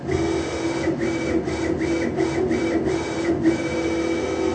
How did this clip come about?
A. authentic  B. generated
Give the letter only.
A